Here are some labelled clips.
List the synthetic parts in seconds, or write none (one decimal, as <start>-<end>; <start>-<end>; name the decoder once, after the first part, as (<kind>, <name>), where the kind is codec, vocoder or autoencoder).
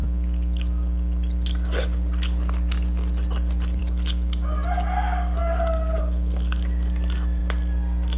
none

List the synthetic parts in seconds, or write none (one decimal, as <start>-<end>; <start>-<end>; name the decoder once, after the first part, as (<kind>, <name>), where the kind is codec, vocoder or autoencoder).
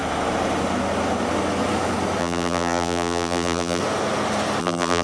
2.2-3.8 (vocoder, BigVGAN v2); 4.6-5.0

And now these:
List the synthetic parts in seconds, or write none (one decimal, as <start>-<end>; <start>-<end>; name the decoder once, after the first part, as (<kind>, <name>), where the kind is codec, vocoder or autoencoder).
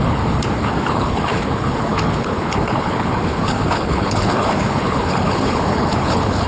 0.0-6.5 (codec, HILCodec)